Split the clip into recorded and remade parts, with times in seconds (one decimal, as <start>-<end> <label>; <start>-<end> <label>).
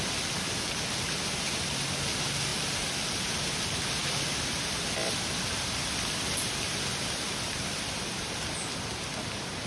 0.0-9.7 recorded